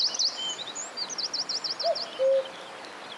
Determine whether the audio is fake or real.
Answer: real